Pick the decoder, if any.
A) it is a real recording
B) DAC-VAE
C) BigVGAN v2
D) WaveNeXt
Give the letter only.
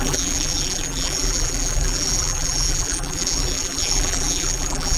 C